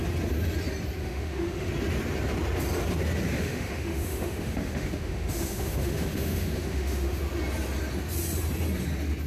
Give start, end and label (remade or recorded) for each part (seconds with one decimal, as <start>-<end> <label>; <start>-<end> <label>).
0.0-1.0 recorded; 1.0-1.7 remade; 1.7-3.4 recorded; 3.4-7.2 remade; 7.2-9.3 recorded